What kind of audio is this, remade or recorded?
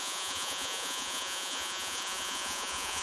remade